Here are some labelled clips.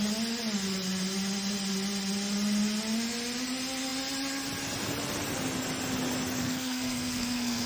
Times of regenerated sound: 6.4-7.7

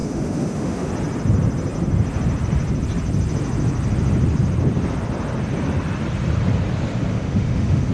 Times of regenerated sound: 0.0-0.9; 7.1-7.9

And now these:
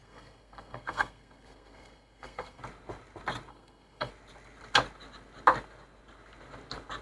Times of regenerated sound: 0.0-2.6; 3.5-4.1

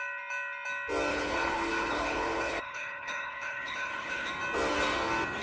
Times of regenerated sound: 1.1-4.3

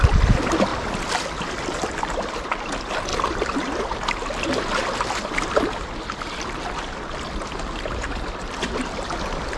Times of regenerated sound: none

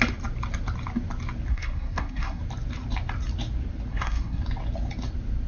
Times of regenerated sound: 1.5-2.4; 3.9-4.4

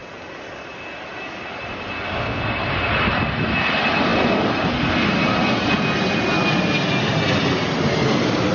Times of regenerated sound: none

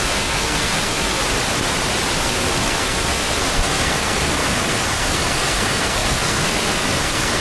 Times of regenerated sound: 0.0-1.2; 2.2-7.4